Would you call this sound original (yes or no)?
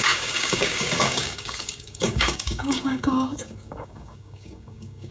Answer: no